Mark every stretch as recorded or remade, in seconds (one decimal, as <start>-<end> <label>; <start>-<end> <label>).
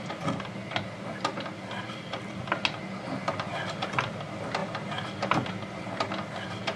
0.0-6.8 recorded